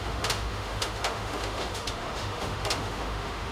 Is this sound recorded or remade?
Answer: remade